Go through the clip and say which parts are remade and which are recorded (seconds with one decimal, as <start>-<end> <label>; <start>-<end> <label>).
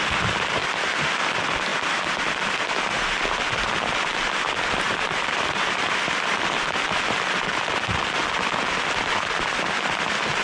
0.0-10.4 recorded